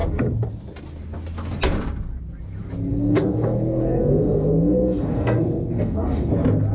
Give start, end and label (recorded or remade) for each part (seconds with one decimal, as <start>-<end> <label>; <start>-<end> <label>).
0.0-2.9 recorded; 2.9-6.3 remade; 6.3-6.7 recorded